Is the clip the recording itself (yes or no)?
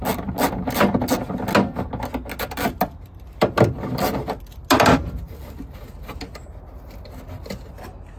yes